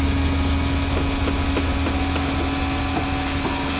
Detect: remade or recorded recorded